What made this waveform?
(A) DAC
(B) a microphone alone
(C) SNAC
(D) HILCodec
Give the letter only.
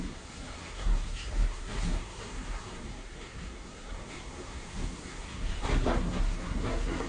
C